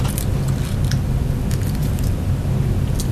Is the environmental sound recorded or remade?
recorded